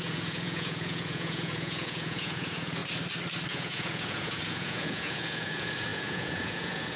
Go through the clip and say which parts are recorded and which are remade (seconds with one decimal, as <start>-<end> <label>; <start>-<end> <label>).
0.0-2.8 remade; 2.8-3.5 recorded; 3.5-7.0 remade